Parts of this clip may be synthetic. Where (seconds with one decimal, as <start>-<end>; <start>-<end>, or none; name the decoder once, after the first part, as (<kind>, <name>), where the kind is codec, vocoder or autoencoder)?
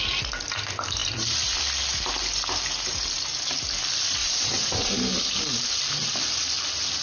4.2-4.9 (vocoder, Vocos)